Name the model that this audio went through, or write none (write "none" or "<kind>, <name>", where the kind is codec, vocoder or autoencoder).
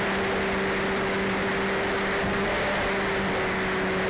none